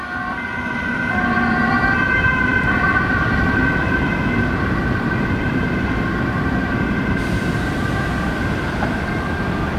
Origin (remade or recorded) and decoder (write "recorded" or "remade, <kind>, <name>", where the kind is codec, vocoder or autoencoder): remade, vocoder, BigVGAN v2